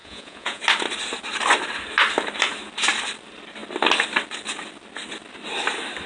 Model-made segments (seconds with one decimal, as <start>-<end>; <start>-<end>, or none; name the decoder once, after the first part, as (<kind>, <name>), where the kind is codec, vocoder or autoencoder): 0.0-0.6 (vocoder, Vocos)

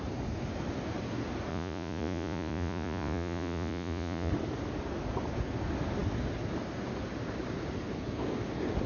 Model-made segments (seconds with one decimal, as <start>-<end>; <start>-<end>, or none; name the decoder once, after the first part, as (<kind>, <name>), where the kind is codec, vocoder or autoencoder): 1.5-4.3 (vocoder, Vocos)

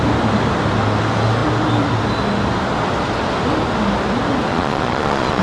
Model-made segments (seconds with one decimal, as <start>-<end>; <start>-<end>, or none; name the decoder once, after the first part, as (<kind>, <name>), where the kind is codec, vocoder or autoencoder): 4.5-5.4 (vocoder, Vocos)